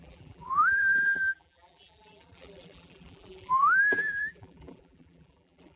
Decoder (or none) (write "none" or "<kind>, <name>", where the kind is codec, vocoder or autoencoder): vocoder, BigVGAN v2